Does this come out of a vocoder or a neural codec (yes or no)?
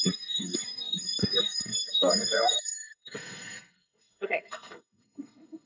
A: yes